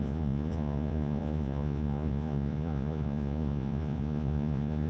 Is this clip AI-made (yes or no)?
yes